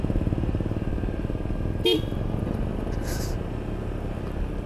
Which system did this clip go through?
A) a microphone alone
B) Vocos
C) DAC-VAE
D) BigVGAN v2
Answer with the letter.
A